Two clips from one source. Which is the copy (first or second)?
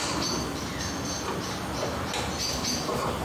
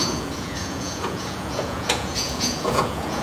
second